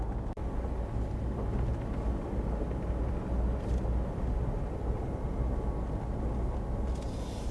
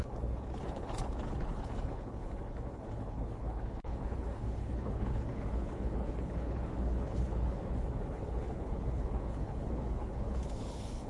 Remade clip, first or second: second